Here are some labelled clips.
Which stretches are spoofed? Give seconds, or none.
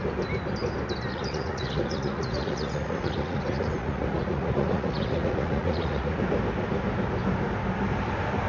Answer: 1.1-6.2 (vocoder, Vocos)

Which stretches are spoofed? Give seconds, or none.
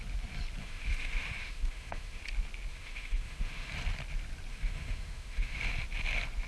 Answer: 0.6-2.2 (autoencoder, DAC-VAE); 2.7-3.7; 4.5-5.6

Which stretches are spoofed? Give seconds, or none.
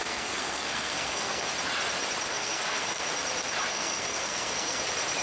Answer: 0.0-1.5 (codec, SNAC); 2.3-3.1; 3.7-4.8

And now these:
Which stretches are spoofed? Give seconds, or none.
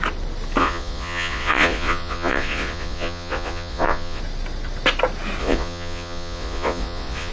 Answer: 0.6-4.2 (vocoder, Vocos); 5.4-7.3